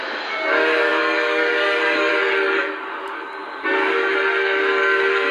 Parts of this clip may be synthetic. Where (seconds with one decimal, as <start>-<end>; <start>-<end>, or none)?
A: 0.0-5.3